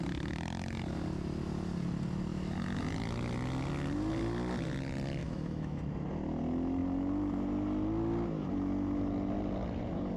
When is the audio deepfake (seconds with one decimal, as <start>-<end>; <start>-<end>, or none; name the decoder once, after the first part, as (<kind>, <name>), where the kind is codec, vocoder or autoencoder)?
5.2-5.8 (autoencoder, DAC-VAE)